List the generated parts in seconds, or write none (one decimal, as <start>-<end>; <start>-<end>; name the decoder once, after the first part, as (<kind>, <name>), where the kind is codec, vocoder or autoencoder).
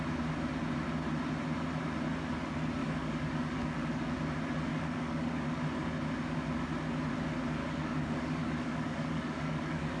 2.8-4.1 (codec, DAC); 4.7-5.6; 7.6-10.0